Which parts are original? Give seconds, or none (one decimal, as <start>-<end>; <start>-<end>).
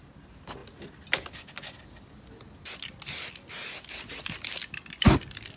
0.0-5.6